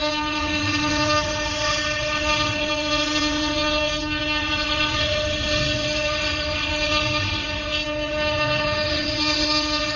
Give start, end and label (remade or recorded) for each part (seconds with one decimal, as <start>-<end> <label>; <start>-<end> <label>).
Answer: 0.0-10.0 remade